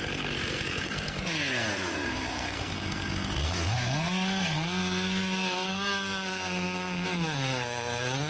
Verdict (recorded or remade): remade